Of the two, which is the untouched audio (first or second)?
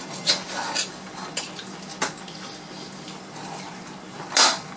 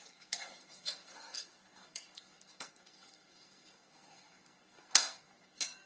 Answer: first